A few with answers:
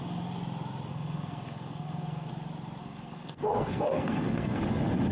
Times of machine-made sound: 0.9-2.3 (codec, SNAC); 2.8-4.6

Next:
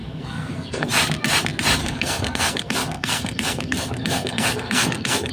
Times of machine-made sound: 0.0-0.9 (codec, SNAC); 1.8-5.3

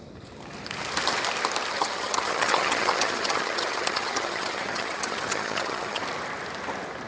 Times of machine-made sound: 1.7-6.0 (vocoder, HiFi-GAN)

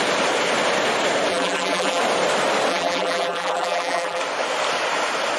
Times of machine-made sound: 1.3-2.0 (vocoder, BigVGAN v2); 2.7-4.2

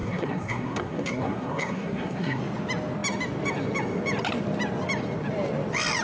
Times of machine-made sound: 0.0-2.4 (codec, SNAC)

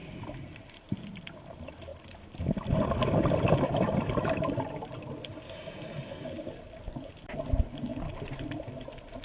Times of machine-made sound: none